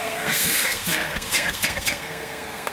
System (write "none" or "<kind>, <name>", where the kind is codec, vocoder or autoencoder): codec, SNAC